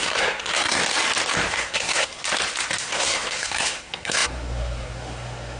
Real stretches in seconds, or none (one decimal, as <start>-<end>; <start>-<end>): 0.8-1.5; 2.2-2.8